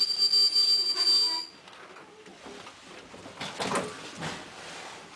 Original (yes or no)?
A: yes